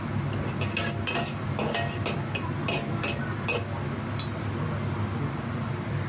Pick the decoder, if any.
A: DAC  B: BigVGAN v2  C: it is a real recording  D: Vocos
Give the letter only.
C